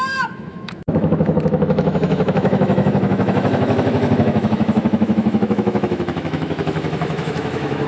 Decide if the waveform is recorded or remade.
remade